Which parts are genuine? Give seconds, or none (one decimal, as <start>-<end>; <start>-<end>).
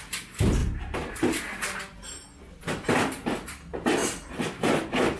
0.0-5.2